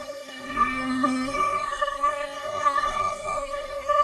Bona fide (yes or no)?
no